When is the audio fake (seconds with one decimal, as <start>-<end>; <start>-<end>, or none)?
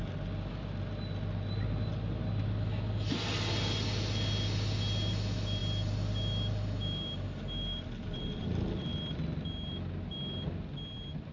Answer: none